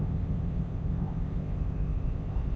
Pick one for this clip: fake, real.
fake